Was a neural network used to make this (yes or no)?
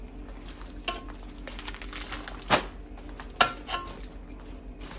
no